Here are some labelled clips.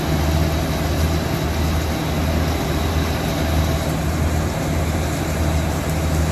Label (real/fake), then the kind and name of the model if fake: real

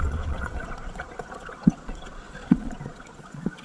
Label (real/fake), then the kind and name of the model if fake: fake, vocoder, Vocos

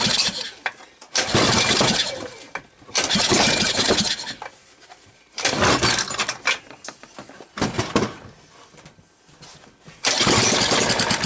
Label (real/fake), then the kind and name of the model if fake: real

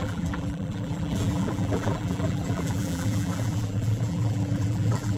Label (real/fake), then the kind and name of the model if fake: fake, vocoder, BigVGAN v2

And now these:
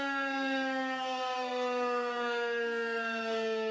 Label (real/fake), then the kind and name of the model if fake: fake, codec, SNAC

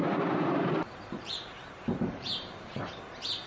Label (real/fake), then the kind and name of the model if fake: fake, vocoder, BigVGAN v2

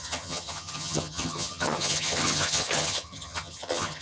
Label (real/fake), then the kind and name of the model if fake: fake, vocoder, HiFi-GAN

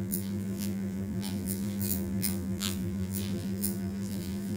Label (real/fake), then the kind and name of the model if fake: fake, vocoder, BigVGAN v2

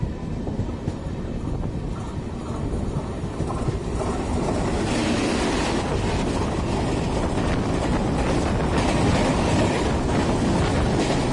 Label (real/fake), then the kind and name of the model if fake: real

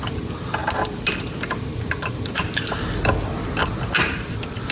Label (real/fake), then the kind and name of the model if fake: real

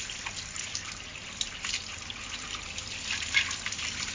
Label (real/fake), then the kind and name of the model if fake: fake, vocoder, BigVGAN v2